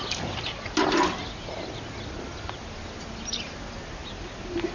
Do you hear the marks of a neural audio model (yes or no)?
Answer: no